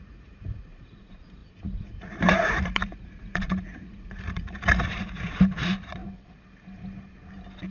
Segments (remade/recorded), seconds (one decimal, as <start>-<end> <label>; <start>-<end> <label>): 0.0-6.0 remade; 6.0-7.7 recorded